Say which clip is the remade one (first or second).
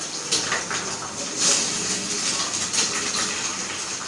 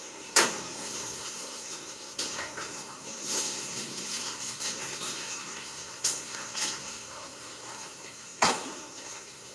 second